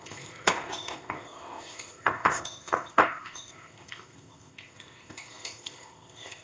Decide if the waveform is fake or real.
fake